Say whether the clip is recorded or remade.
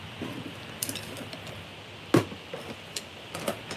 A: recorded